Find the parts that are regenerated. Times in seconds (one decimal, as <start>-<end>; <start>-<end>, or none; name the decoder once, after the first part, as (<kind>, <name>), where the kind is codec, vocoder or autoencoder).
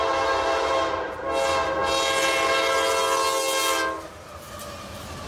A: none